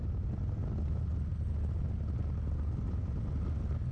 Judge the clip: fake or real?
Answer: real